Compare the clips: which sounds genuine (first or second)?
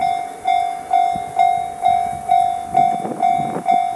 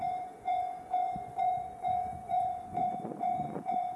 first